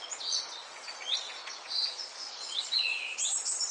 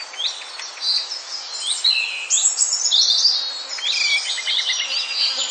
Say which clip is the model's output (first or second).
first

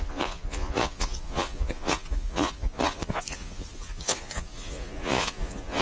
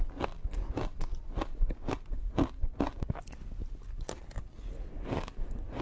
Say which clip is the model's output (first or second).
first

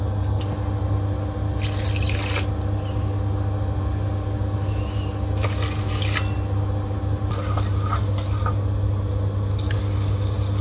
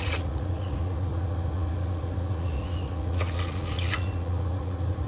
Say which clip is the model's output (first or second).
second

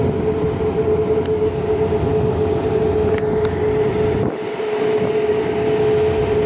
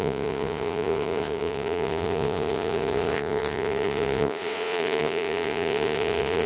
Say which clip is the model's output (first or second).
second